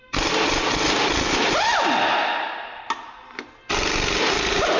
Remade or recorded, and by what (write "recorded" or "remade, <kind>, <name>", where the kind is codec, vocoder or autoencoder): recorded